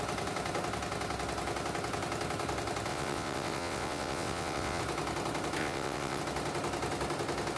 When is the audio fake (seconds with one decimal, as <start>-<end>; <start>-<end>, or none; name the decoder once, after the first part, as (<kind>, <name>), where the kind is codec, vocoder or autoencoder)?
2.9-4.8 (vocoder, WaveNeXt); 5.6-6.2